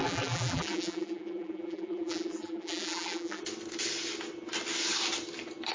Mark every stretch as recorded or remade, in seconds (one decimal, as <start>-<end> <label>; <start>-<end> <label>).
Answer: 0.0-3.4 remade; 3.4-5.7 recorded